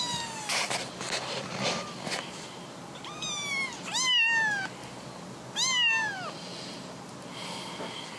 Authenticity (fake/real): real